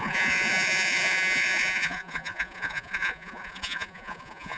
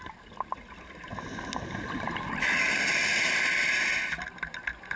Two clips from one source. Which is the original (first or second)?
second